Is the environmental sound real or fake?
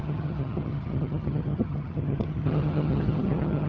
fake